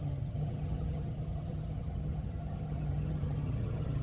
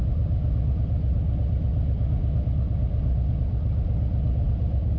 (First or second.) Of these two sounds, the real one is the second